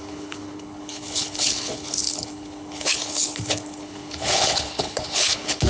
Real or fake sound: fake